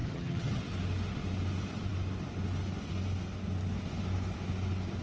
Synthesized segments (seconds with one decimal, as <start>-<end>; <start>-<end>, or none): 0.0-0.6